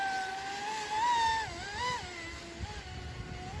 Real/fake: real